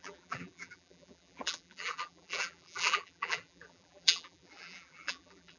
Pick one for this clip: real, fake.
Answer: fake